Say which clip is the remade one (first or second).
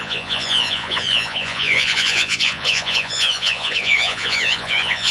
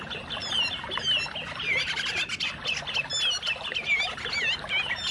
first